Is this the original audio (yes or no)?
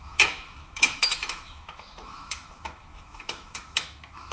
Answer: no